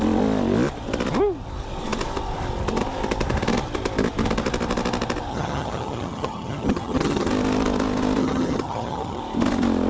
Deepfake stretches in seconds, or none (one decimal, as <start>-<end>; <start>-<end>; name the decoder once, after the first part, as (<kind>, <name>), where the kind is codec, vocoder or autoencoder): 5.3-7.3 (vocoder, HiFi-GAN); 8.2-9.2